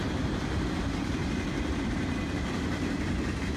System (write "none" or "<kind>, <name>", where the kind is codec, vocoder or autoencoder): none